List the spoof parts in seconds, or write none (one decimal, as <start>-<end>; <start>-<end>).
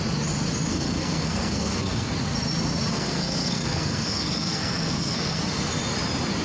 0.7-2.1; 2.9-5.4